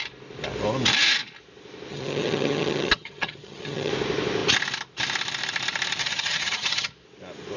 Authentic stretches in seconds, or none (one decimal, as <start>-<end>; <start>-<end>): 0.0-1.9; 3.9-6.0; 6.9-7.6